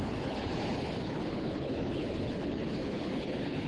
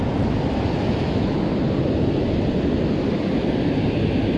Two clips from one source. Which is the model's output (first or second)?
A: first